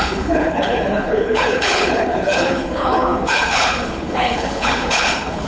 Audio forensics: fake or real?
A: fake